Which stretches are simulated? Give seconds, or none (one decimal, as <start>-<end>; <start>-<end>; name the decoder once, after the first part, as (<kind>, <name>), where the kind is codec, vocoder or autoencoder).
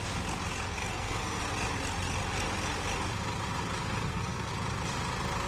0.8-1.4 (codec, SNAC); 3.8-4.5